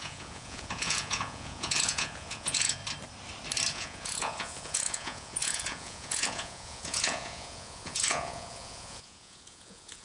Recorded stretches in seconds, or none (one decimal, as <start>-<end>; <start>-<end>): 2.8-3.7